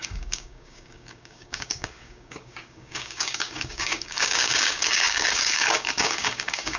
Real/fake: fake